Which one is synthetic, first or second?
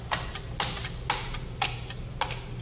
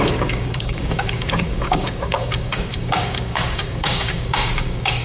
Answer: second